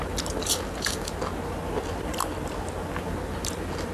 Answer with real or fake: real